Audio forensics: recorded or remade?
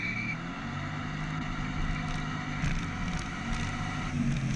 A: recorded